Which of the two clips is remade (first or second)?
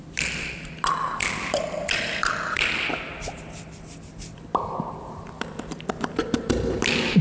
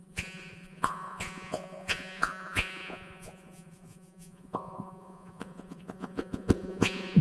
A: second